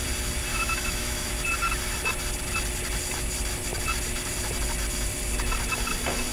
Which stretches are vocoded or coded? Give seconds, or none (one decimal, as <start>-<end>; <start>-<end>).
0.5-1.3